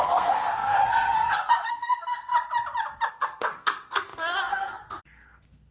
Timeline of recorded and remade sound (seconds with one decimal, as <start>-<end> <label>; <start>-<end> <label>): 0.0-2.3 remade; 2.3-3.1 recorded; 3.1-5.7 remade